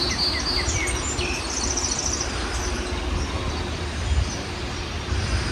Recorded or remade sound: recorded